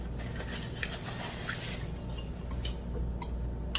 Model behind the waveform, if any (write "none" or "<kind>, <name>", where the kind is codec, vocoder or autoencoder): none